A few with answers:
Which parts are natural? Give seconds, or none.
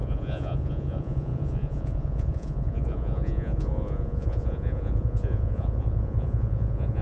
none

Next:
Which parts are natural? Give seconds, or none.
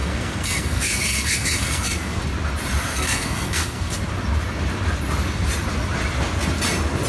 2.2-2.9; 4.0-7.1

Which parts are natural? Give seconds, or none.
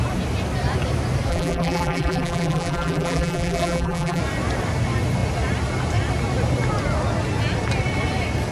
0.0-1.3; 4.2-8.5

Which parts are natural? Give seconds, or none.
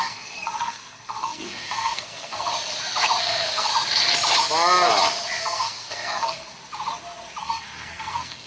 2.5-3.2; 3.7-5.4; 6.6-7.4